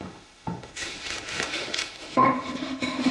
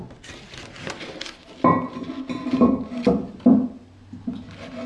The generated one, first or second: first